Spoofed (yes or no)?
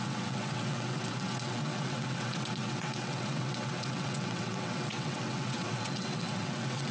yes